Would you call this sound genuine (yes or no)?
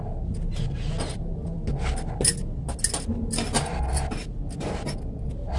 yes